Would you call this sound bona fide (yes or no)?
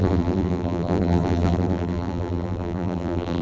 no